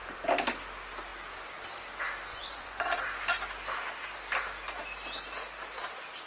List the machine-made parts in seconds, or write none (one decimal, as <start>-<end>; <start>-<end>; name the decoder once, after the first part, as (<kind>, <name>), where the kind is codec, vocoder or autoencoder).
2.3-3.0 (vocoder, Vocos)